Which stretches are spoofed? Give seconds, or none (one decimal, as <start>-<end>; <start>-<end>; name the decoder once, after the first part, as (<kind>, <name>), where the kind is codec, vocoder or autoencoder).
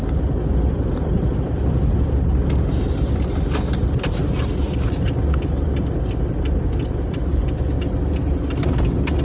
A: 4.2-7.5 (vocoder, BigVGAN v2)